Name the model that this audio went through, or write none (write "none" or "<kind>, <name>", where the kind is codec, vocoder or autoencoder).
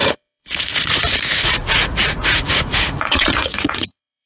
vocoder, Vocos